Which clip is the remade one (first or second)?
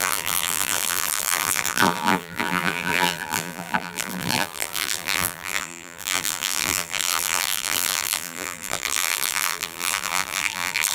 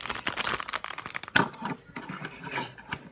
first